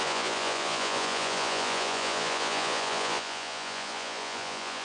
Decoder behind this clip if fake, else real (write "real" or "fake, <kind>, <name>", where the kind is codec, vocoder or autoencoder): fake, vocoder, Vocos